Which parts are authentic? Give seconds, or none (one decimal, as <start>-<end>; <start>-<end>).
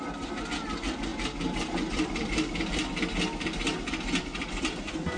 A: 0.0-5.2